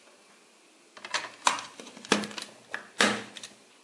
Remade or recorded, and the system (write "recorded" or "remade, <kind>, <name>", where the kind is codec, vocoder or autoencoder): recorded